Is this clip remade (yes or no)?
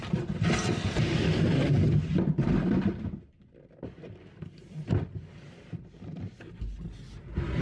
no